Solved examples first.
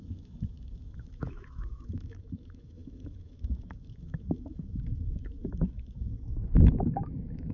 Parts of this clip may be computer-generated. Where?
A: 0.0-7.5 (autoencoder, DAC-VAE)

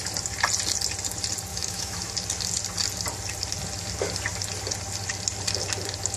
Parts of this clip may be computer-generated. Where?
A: 1.5-2.1 (autoencoder, DAC-VAE)

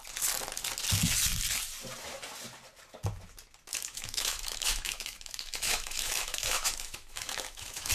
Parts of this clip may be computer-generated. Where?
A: 3.7-7.9 (autoencoder, DAC-VAE)